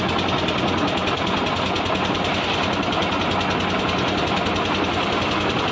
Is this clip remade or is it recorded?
recorded